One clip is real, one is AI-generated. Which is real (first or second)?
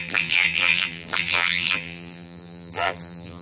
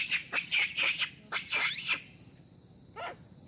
second